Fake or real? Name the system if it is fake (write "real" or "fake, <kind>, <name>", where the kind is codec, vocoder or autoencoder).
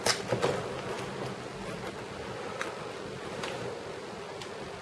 real